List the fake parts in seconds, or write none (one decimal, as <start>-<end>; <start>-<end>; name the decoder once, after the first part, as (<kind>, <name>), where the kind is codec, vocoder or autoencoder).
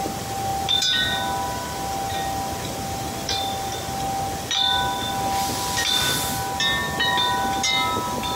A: none